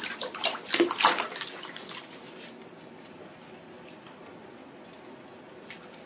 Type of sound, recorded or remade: recorded